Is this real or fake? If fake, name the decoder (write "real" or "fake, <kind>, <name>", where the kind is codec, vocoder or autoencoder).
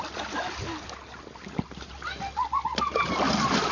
real